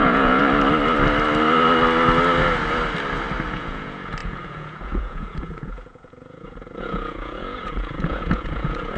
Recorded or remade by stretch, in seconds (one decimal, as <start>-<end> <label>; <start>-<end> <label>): 0.0-0.4 remade; 0.4-3.5 recorded; 3.5-9.0 remade